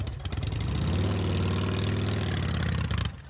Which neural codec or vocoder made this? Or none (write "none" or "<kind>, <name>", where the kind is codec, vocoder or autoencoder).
none